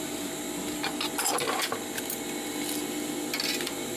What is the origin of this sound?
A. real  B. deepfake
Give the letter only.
A